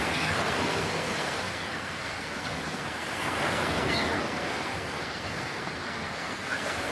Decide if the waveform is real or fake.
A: fake